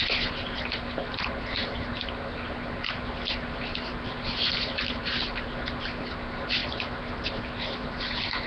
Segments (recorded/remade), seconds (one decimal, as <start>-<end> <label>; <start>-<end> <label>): 0.0-8.5 recorded